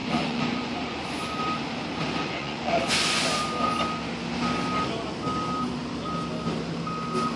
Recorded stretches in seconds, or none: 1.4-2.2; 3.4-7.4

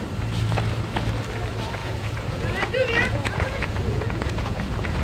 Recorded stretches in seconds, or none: 0.0-1.8

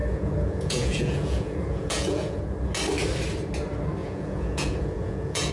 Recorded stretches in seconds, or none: 2.4-4.0

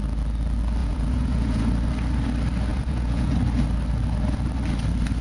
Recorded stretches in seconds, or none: 0.0-0.8; 1.6-2.7; 3.3-5.2